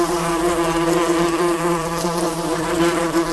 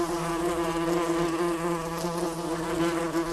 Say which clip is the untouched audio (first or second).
second